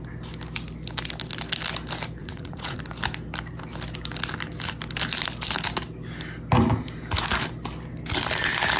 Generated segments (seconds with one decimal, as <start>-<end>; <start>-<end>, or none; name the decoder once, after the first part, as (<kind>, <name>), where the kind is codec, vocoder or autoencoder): 2.2-2.8 (vocoder, Vocos)